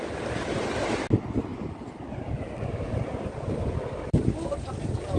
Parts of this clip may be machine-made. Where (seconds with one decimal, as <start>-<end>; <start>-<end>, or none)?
none